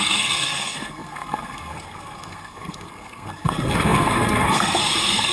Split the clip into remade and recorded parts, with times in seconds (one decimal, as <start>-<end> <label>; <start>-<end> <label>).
0.0-5.3 remade